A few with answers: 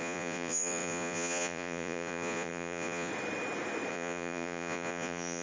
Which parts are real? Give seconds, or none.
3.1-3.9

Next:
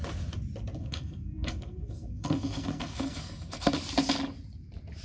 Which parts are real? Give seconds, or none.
0.0-0.8; 3.8-5.0